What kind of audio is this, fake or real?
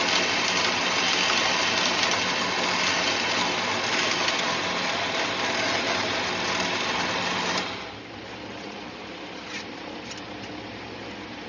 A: real